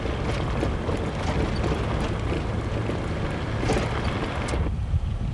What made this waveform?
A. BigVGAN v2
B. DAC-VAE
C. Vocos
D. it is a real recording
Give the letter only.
D